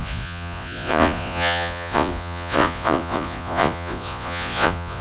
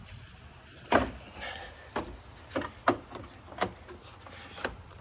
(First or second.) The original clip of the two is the second